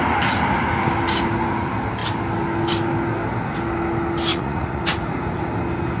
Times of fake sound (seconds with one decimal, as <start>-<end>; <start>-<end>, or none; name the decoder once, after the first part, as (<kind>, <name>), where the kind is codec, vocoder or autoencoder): 4.3-4.8 (vocoder, Vocos)